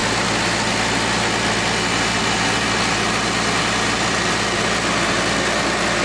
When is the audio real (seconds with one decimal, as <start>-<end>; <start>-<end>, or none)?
0.0-6.0